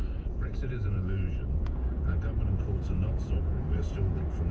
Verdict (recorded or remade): remade